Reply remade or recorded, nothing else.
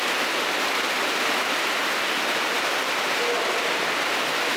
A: recorded